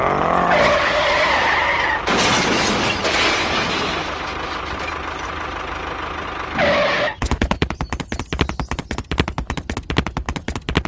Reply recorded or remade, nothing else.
recorded